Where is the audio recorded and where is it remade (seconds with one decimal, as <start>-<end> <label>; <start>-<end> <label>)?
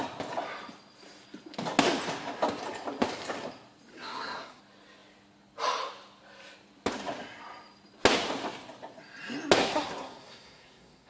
0.0-3.9 recorded; 3.9-4.6 remade; 4.6-9.6 recorded; 9.6-11.1 remade